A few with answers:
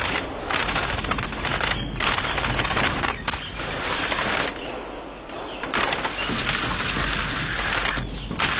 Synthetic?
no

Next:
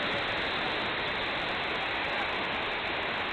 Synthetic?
no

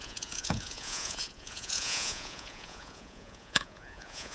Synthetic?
yes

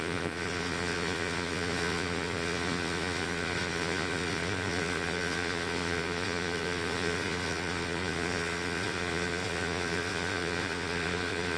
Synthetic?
yes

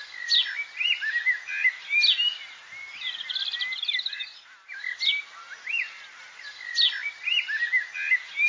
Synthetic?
no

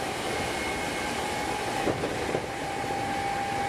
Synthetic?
no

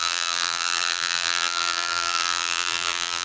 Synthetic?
yes